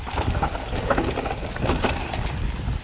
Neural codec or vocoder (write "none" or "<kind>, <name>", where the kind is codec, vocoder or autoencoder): none